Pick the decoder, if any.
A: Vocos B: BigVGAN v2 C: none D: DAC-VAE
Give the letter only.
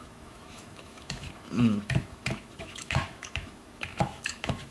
D